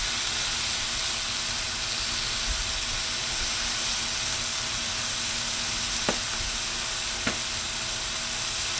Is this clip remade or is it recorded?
recorded